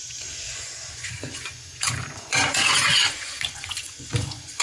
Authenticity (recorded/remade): remade